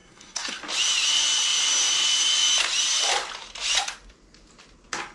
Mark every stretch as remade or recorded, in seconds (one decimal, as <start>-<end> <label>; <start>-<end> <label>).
0.0-0.6 remade; 0.6-5.1 recorded